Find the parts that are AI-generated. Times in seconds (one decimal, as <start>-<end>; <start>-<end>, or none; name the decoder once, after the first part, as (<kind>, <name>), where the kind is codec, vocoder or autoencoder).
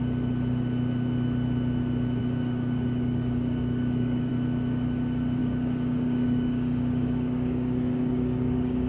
2.2-4.3 (codec, DAC); 5.4-8.9